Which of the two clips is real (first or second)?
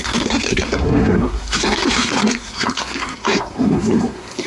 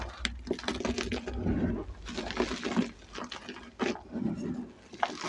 second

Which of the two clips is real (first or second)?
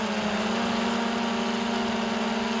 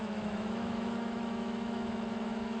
first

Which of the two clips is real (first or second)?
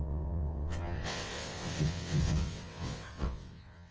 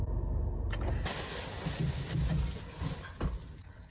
second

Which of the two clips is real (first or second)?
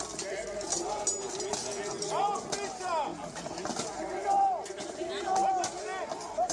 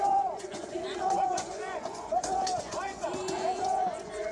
first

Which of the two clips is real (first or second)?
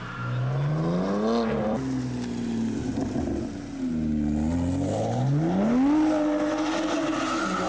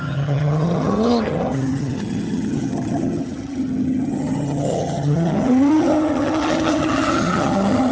first